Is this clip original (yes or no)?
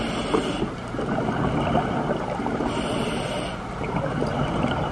yes